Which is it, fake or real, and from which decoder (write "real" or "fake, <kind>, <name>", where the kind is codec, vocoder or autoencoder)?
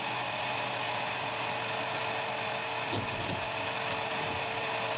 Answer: real